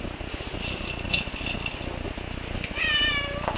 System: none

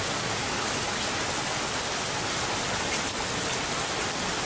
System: none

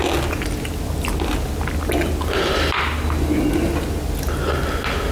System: none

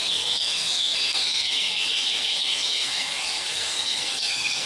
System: codec, SNAC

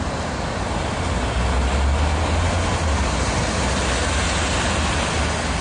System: none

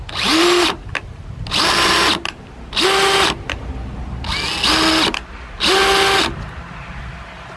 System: none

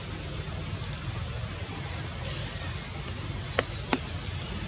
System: none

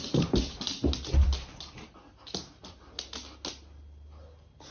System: none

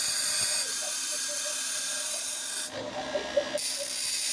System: none